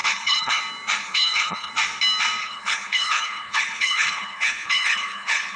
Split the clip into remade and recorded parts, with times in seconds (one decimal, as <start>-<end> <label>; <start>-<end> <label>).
0.0-0.6 remade; 0.6-1.0 recorded; 1.0-1.7 remade; 1.7-2.4 recorded; 2.4-5.6 remade